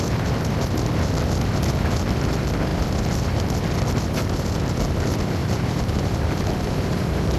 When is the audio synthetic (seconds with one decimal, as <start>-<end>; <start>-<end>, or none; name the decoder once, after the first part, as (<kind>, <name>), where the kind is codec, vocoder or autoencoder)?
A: 5.4-7.4 (vocoder, BigVGAN v2)